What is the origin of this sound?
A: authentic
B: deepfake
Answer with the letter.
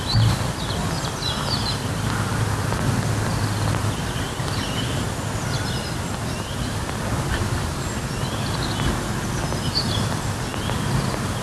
A